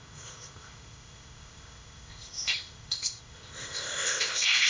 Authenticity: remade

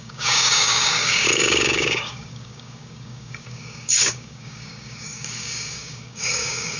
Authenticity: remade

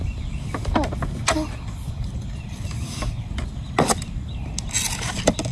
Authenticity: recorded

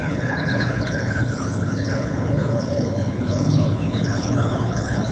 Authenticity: remade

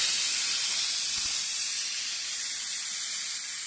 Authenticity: recorded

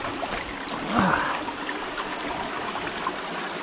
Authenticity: recorded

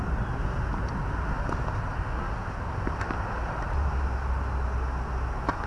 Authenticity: recorded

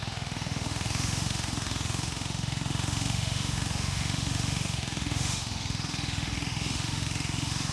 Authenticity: remade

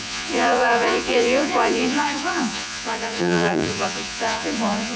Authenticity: remade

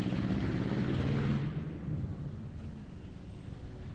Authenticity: recorded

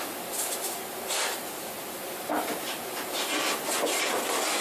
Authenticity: recorded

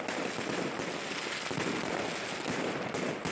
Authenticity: recorded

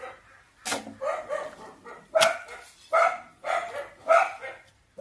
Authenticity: recorded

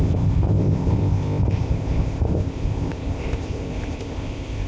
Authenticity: remade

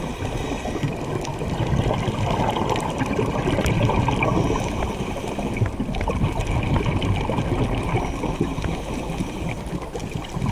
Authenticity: recorded